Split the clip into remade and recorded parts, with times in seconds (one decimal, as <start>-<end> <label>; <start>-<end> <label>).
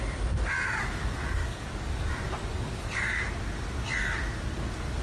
0.0-1.4 recorded; 1.4-2.1 remade; 2.1-2.5 recorded; 2.5-3.2 remade; 3.2-5.0 recorded